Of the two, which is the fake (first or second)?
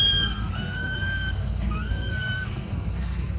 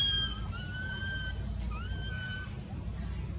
first